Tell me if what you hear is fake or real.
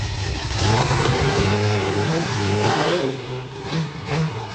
fake